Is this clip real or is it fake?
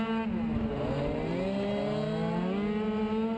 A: real